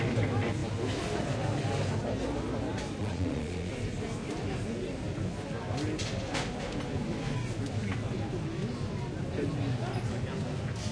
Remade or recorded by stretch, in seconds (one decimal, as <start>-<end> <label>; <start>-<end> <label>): 0.0-3.0 recorded; 3.0-3.7 remade; 3.7-10.9 recorded